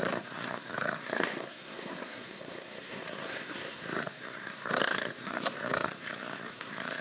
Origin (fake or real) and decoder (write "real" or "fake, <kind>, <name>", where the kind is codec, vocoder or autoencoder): fake, codec, SNAC